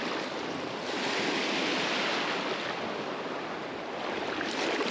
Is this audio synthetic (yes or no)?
no